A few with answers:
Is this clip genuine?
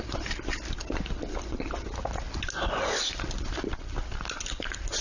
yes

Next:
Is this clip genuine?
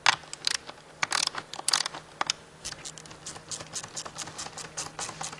yes